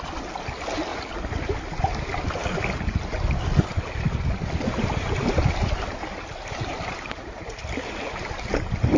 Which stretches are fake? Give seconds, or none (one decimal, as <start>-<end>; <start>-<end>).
none